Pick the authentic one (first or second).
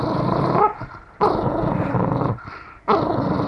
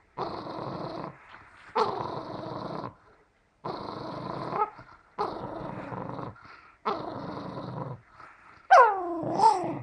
second